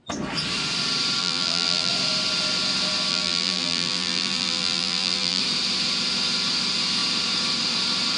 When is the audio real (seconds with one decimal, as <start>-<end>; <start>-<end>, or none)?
0.0-1.2; 1.9-3.1; 5.4-8.2